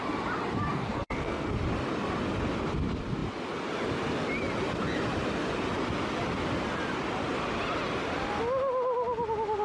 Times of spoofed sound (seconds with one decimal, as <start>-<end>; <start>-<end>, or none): 0.7-1.5